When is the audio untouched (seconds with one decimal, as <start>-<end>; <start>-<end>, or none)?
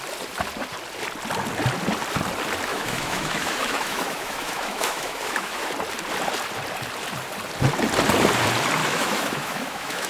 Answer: 0.0-2.7; 5.7-8.8